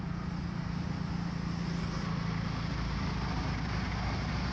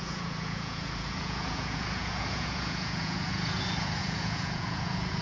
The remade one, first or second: second